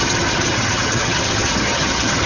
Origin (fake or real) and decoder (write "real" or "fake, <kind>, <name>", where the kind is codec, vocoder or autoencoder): fake, vocoder, HiFi-GAN